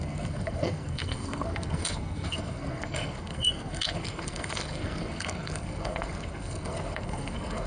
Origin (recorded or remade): remade